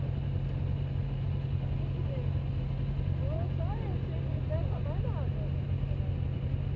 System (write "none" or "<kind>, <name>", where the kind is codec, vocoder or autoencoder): none